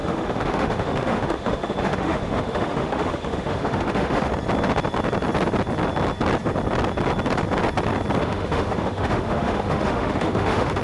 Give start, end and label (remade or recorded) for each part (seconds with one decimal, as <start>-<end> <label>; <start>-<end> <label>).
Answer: 0.0-4.3 remade; 4.3-8.2 recorded; 8.2-10.8 remade